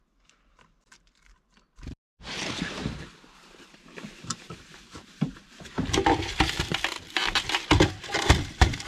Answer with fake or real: fake